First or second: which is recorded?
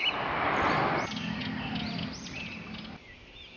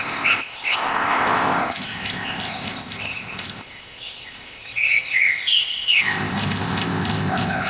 first